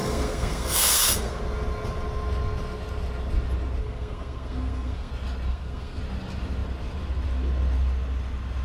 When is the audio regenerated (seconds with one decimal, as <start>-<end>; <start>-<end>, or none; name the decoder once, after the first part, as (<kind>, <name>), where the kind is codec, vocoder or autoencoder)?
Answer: 0.0-1.4 (codec, SNAC); 3.8-5.1; 5.5-6.0